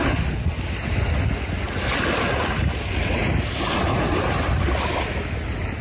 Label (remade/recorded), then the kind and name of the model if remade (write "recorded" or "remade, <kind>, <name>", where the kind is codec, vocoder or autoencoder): recorded